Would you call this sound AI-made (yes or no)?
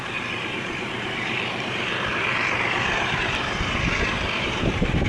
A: yes